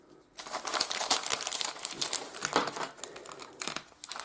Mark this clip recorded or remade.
remade